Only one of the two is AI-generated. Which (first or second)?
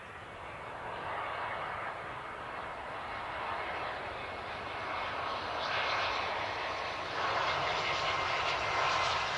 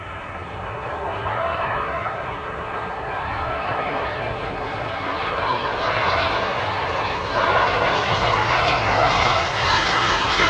second